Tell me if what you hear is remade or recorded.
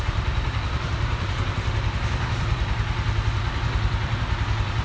remade